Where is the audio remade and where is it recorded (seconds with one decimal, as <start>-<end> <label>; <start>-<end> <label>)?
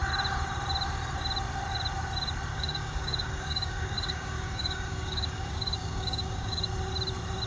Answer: 0.0-2.5 recorded; 2.5-6.7 remade; 6.7-7.5 recorded